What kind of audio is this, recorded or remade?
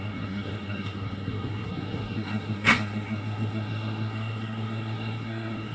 remade